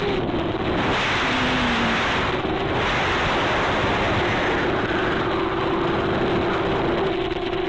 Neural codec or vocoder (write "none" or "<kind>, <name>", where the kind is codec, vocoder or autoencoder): none